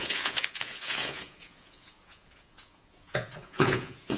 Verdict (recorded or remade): remade